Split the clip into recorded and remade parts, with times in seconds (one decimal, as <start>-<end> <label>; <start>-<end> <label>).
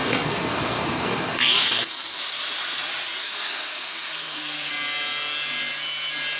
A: 0.0-2.2 remade; 2.2-3.2 recorded; 3.2-4.7 remade; 4.7-6.4 recorded